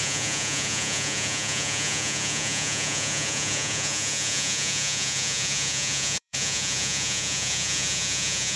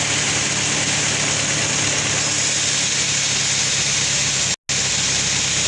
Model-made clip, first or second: first